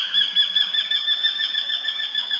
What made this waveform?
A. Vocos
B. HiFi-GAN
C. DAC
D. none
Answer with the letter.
C